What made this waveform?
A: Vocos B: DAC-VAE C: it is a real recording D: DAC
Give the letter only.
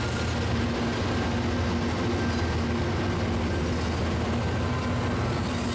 C